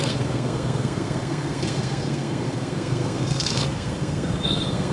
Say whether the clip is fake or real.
fake